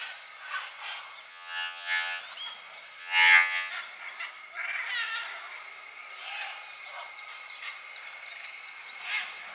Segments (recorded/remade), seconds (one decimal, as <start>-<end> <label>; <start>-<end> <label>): 0.0-1.3 recorded; 1.3-2.2 remade; 2.2-3.0 recorded; 3.0-3.7 remade; 3.7-9.5 recorded